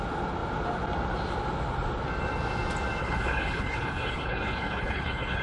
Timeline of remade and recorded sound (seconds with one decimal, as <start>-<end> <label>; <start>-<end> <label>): 0.0-3.0 recorded; 3.0-5.4 remade